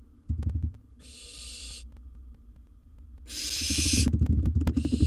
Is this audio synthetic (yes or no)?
no